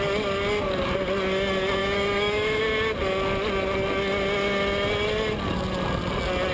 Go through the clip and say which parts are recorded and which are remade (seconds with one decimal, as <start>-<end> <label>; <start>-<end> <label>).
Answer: 0.0-1.8 recorded; 1.8-2.6 remade; 2.6-6.5 recorded